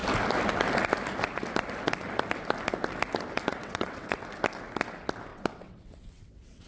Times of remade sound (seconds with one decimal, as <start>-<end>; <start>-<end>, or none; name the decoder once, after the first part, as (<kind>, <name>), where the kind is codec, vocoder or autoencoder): 3.5-4.3 (vocoder, WaveNeXt); 5.3-6.7